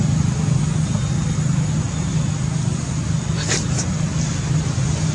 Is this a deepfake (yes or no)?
no